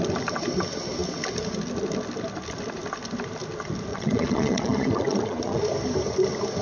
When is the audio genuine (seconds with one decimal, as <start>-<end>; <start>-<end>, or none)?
0.0-3.9; 5.6-6.6